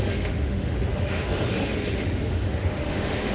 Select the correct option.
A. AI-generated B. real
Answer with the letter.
A